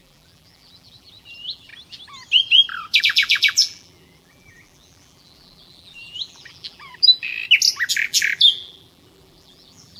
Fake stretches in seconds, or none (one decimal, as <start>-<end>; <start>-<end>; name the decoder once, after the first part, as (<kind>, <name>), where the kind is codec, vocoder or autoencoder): 0.0-1.7 (vocoder, BigVGAN v2); 3.0-7.3; 7.9-10.0